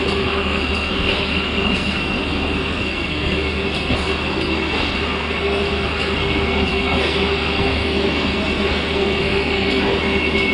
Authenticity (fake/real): fake